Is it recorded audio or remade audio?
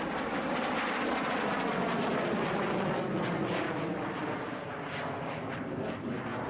recorded